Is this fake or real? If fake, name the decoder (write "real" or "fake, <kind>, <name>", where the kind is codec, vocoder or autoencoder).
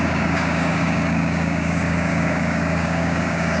fake, codec, DAC